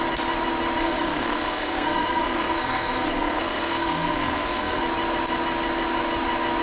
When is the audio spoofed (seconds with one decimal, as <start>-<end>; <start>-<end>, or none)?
0.8-4.8